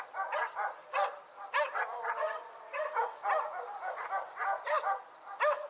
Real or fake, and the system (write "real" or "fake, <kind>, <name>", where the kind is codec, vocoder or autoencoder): real